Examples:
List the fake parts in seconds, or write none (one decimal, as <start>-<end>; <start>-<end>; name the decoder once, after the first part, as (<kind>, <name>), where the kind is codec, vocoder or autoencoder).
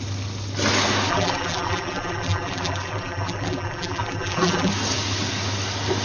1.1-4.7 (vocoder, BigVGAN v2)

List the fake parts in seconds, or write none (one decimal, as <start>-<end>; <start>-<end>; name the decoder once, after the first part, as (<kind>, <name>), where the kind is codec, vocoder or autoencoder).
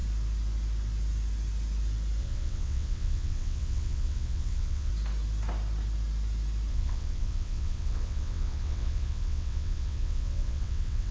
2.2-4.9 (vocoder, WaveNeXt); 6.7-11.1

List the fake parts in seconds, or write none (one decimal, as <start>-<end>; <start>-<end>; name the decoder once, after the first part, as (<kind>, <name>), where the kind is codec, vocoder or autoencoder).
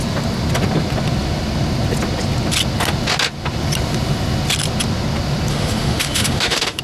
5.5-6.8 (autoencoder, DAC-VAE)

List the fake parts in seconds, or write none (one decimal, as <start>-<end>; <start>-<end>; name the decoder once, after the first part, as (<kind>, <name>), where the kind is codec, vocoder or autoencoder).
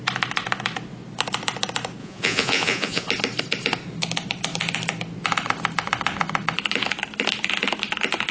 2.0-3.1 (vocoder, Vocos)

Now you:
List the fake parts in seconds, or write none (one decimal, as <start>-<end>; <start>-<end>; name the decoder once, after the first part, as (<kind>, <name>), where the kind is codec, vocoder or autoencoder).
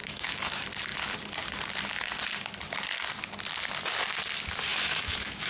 0.0-0.5 (autoencoder, DAC-VAE); 4.7-5.5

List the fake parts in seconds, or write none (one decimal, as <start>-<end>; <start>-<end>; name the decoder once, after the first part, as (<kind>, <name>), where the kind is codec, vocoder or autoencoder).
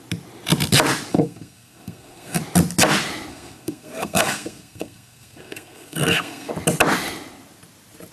1.1-2.4 (codec, SNAC); 3.3-6.5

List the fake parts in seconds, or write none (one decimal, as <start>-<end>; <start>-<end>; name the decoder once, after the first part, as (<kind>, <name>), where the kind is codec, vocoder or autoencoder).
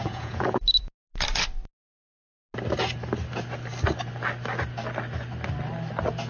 0.0-0.6 (vocoder, Vocos)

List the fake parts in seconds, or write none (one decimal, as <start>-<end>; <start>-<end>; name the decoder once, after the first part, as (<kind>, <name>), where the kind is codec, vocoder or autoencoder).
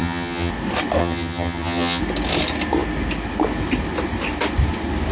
0.0-0.5 (vocoder, HiFi-GAN); 1.0-2.0